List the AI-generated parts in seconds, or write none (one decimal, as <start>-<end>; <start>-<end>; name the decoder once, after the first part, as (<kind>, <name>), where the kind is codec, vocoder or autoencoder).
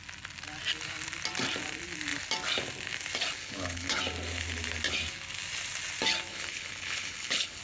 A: 3.4-4.0 (codec, HILCodec); 6.3-7.6